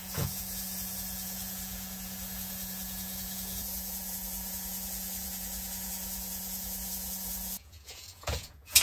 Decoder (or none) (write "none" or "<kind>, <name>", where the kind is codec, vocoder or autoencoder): vocoder, Vocos